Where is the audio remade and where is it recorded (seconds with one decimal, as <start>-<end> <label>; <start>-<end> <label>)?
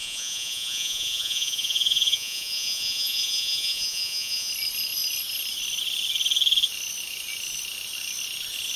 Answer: 0.0-4.5 remade; 4.5-8.8 recorded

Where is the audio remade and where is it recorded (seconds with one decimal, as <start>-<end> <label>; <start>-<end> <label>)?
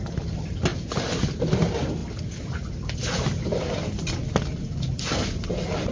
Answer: 0.0-5.9 recorded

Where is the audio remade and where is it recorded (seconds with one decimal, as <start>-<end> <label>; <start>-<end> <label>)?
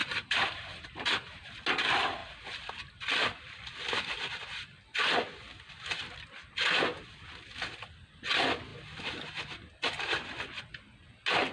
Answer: 0.0-1.6 remade; 1.6-2.2 recorded; 2.2-2.7 remade; 2.7-11.5 recorded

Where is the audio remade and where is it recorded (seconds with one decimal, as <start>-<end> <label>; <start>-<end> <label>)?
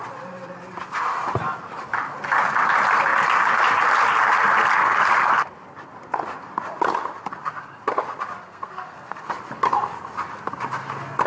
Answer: 0.0-8.4 recorded; 8.4-9.3 remade; 9.3-11.3 recorded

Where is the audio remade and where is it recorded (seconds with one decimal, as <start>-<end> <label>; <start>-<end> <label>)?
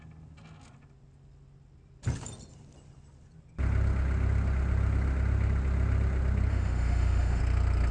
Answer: 0.0-6.5 recorded; 6.5-7.4 remade; 7.4-7.9 recorded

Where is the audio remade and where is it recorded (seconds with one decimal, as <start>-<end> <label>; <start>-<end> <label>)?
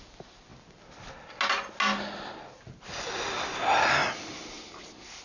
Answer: 0.0-5.2 recorded